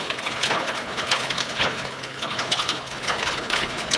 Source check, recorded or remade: remade